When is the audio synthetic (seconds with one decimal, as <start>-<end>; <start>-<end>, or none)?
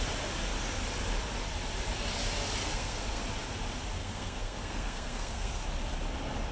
2.6-3.2; 4.0-5.6